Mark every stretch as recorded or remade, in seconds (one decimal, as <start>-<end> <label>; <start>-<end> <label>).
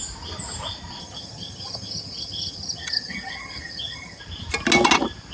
0.0-1.0 recorded; 1.0-4.2 remade; 4.2-5.3 recorded